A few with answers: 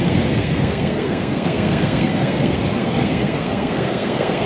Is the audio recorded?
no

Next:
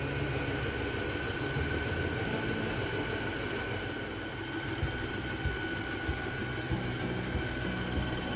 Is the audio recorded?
yes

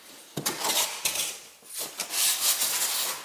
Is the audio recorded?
yes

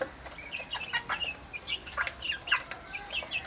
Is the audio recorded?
yes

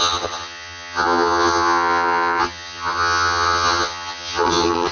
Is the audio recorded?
no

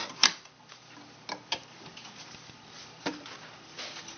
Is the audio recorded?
no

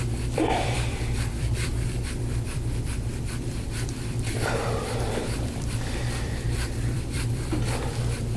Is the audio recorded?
no